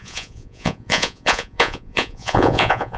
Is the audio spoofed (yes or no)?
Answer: yes